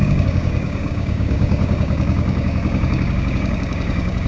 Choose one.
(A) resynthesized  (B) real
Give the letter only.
A